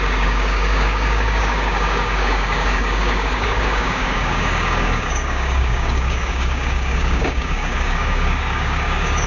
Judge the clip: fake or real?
fake